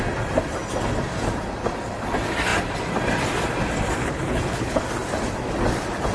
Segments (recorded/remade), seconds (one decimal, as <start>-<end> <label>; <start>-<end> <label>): 0.0-4.0 recorded; 4.0-4.8 remade; 4.8-6.1 recorded